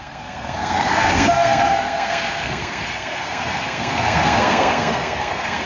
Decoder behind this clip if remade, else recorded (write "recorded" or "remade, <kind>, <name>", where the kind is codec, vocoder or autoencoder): remade, codec, SNAC